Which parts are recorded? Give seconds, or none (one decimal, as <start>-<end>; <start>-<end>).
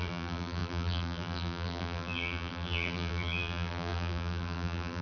none